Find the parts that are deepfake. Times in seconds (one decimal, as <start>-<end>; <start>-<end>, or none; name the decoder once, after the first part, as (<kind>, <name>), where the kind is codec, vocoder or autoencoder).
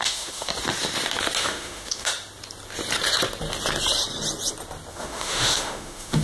0.0-0.5 (autoencoder, DAC-VAE); 1.4-2.1; 4.9-6.2